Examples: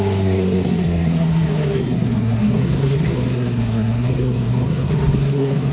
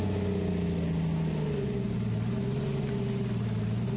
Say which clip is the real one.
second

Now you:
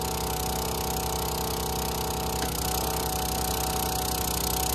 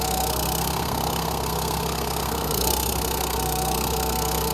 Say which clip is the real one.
first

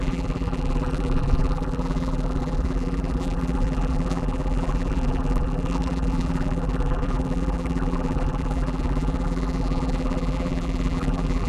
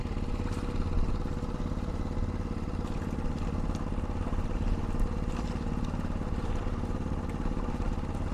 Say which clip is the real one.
second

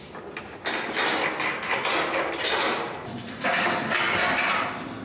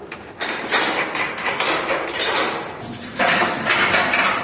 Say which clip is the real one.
first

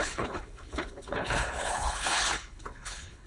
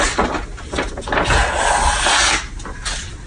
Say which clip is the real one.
second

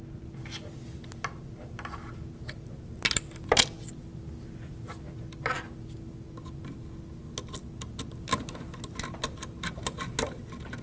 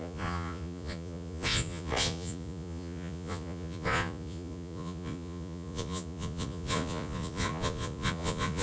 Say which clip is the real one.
first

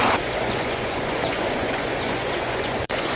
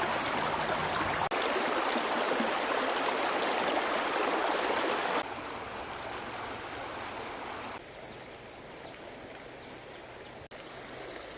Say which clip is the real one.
second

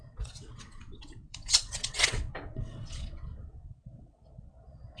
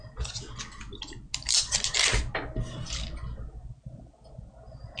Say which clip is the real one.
second